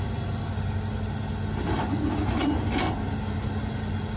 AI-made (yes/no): no